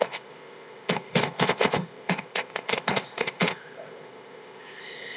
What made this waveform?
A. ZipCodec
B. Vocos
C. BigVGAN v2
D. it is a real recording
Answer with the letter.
A